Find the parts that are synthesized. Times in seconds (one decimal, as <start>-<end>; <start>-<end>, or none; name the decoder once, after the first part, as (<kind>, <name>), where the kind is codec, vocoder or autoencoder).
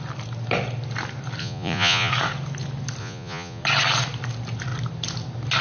1.4-2.1 (vocoder, Vocos); 3.0-3.6